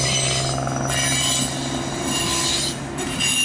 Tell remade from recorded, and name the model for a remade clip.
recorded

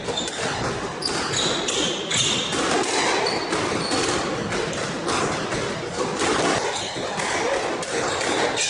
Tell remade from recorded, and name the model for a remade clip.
recorded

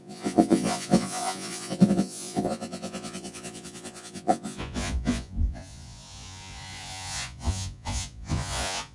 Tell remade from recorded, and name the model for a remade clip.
remade, vocoder, Vocos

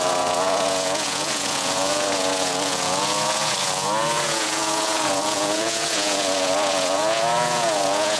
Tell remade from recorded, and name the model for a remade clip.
remade, vocoder, Vocos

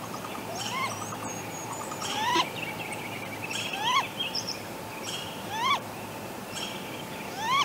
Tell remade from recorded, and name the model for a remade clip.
remade, vocoder, BigVGAN v2